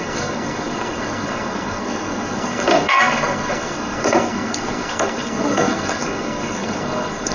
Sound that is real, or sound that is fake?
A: fake